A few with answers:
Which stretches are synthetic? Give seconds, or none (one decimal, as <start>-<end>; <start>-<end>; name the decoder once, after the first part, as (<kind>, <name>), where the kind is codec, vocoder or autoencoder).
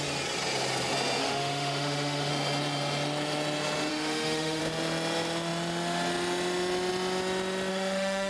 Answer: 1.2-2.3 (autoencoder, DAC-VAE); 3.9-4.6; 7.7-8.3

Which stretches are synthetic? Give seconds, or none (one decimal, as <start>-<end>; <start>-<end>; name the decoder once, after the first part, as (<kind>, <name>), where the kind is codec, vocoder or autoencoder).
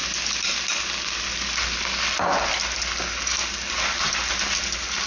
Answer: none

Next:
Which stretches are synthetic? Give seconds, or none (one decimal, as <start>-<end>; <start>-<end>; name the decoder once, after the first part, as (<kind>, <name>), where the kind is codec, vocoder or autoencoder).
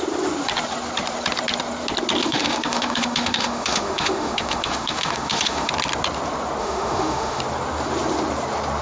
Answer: 2.2-5.7 (autoencoder, DAC-VAE); 6.6-7.4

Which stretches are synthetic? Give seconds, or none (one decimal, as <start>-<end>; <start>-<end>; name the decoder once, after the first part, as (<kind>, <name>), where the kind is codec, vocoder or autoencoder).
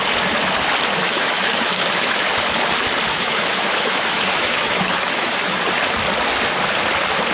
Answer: 1.0-2.2 (autoencoder, DAC-VAE); 3.1-5.6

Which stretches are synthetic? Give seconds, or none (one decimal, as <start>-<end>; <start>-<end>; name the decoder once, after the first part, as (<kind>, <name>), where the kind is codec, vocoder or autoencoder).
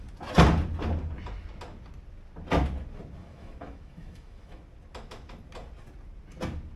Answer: 3.2-4.6 (autoencoder, DAC-VAE)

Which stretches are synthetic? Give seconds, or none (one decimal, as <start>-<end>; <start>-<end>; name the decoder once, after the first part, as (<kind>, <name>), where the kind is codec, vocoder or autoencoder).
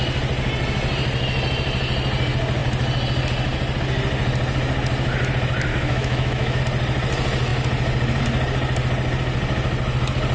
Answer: 5.7-6.6 (autoencoder, DAC-VAE)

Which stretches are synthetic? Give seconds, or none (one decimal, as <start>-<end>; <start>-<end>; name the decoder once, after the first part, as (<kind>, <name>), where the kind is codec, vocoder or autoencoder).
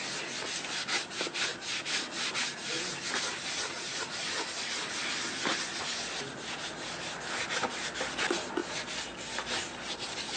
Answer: none